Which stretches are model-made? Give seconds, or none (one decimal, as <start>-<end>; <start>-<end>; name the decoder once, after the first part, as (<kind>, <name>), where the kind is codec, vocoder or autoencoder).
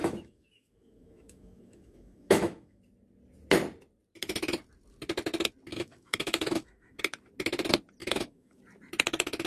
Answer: 0.0-2.8 (autoencoder, DAC-VAE); 5.7-7.0; 8.0-8.6